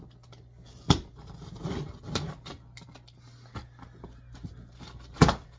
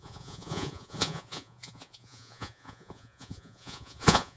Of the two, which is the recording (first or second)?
first